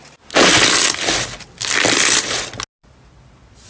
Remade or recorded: recorded